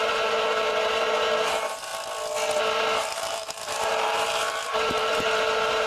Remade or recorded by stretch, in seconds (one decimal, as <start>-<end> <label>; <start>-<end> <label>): 0.0-1.9 remade; 1.9-2.6 recorded; 2.6-5.9 remade